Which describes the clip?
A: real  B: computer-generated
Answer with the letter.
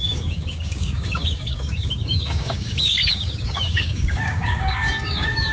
B